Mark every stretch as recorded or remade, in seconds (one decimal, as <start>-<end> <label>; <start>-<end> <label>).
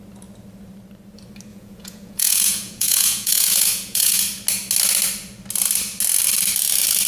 0.0-1.5 recorded; 1.5-4.2 remade; 4.2-7.1 recorded